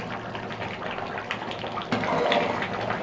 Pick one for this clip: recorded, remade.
recorded